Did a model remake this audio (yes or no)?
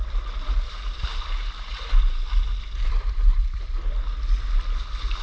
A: no